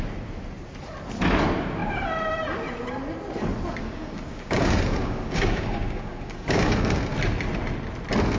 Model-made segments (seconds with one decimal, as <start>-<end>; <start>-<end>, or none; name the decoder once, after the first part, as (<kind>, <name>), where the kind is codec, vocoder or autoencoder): 3.8-7.0 (codec, DAC)